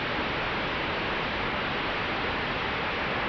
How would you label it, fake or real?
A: real